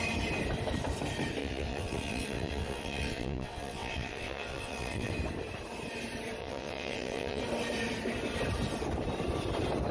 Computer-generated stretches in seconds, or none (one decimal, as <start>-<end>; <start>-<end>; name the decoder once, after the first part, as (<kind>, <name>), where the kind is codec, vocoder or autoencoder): 1.4-5.1 (vocoder, WaveNeXt); 6.4-7.4